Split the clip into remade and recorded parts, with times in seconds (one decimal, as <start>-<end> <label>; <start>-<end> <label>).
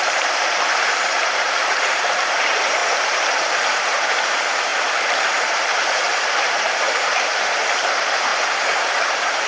0.0-9.5 remade